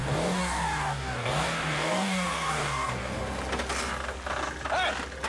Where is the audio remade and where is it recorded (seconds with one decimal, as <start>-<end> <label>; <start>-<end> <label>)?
0.0-3.2 remade; 3.2-5.3 recorded

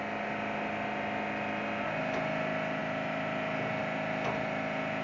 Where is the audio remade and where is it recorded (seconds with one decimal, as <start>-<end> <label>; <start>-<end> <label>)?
0.0-5.0 recorded